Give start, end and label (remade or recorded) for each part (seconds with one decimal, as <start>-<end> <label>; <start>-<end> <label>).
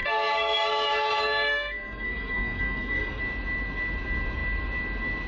0.0-3.2 remade; 3.2-5.3 recorded